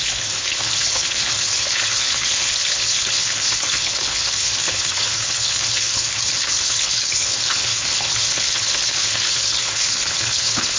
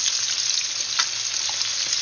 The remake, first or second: first